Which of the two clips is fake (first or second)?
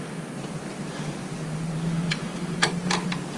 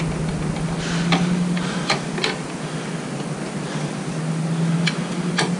first